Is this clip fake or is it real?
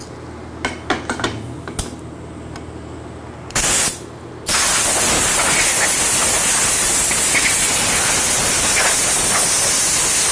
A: real